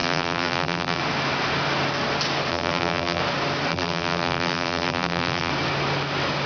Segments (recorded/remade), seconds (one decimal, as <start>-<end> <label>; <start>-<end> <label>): 0.0-1.0 remade; 1.0-2.5 recorded; 2.5-3.2 remade; 3.2-3.7 recorded; 3.7-5.5 remade; 5.5-6.5 recorded